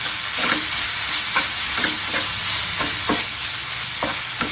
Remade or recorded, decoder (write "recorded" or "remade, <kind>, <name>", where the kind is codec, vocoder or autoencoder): recorded